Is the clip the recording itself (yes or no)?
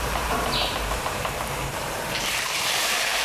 no